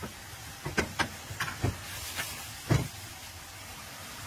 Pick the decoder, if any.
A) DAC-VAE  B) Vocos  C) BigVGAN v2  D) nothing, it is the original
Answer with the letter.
C